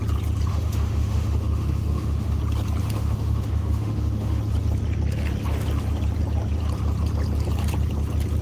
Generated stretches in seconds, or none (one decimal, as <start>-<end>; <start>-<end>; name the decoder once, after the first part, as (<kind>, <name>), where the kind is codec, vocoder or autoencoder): 0.5-2.4 (autoencoder, DAC-VAE); 2.8-4.4